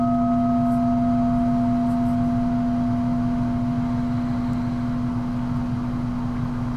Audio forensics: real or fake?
real